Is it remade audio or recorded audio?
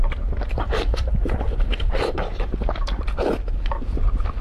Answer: remade